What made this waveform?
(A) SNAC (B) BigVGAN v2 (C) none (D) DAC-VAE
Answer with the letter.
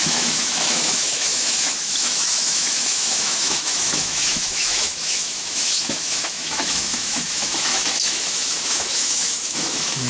D